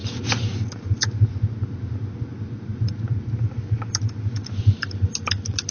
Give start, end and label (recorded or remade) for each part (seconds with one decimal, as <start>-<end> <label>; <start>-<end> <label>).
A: 0.0-5.7 recorded